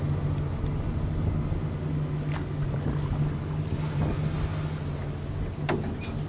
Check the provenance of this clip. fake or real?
real